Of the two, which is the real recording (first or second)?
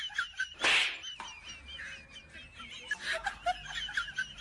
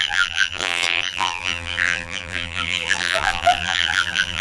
first